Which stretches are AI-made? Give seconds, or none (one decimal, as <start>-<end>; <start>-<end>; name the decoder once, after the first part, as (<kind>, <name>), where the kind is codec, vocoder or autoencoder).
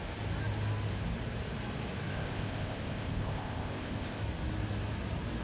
2.1-4.2 (codec, ZipCodec)